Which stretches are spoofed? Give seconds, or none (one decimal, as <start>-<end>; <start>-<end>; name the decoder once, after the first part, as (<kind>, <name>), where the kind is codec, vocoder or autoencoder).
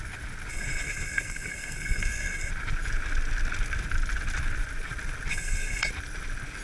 0.5-2.5 (codec, SNAC); 5.3-5.9